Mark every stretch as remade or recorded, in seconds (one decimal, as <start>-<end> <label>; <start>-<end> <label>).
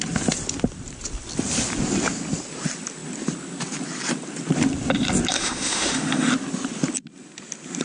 0.0-5.3 recorded; 5.3-6.3 remade; 6.3-7.8 recorded